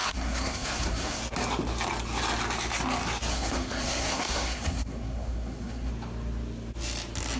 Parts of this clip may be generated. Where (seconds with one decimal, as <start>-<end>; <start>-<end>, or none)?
0.0-1.2; 3.3-5.9